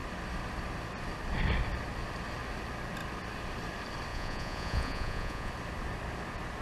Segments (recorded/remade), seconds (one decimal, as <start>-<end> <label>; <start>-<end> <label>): 0.0-4.1 recorded; 4.1-5.5 remade; 5.5-6.6 recorded